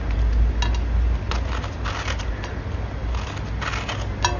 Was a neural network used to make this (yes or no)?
no